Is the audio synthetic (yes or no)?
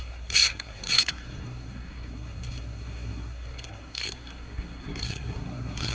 yes